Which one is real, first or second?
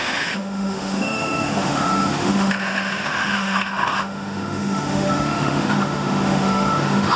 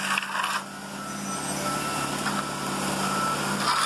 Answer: second